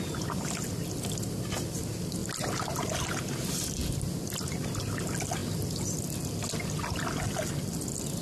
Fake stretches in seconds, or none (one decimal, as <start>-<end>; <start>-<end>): none